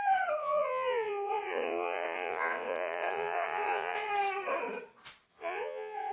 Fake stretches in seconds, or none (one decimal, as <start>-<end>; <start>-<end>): 0.4-4.1; 5.3-6.1